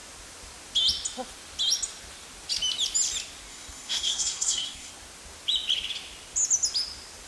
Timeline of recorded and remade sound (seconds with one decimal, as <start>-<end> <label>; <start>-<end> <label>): 0.0-3.5 recorded; 3.5-4.9 remade; 4.9-7.3 recorded